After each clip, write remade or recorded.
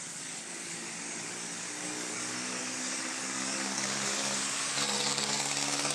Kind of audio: remade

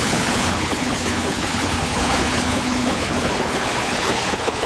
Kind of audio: remade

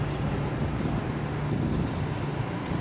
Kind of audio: recorded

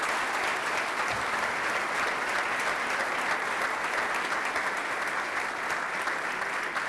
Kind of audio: recorded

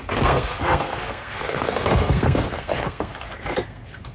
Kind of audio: remade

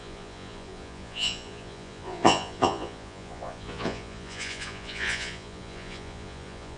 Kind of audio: remade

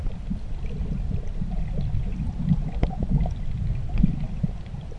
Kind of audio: recorded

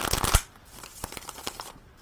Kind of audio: recorded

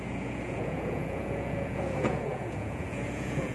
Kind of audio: remade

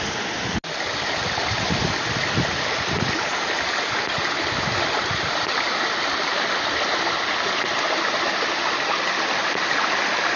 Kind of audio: recorded